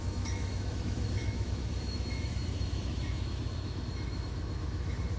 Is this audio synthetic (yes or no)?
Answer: yes